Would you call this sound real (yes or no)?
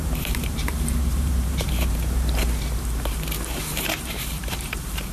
no